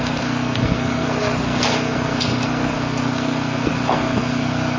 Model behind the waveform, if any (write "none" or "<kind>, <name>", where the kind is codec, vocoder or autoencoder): codec, SNAC